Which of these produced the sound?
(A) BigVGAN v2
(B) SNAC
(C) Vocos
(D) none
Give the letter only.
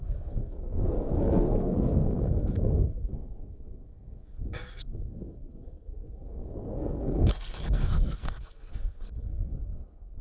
B